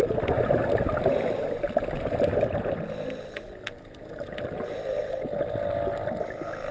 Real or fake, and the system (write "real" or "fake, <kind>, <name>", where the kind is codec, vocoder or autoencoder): real